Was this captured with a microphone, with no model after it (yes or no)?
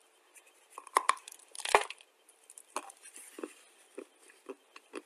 yes